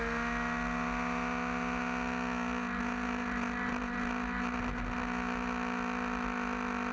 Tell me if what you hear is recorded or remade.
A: recorded